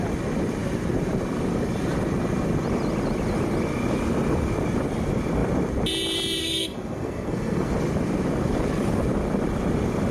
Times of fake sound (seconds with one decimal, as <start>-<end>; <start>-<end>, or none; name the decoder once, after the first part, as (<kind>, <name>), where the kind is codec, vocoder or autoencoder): 6.4-7.7 (codec, SNAC)